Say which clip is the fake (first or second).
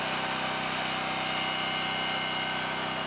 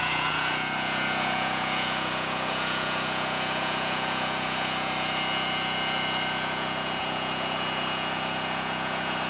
second